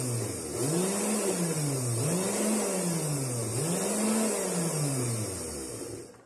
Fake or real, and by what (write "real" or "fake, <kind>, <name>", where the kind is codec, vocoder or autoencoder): real